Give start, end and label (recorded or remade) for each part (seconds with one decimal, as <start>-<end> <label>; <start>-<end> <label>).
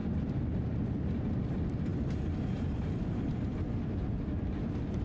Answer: 0.0-5.0 recorded